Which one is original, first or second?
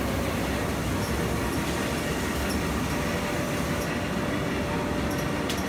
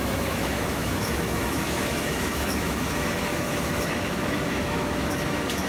first